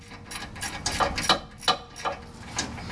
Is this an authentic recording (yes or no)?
yes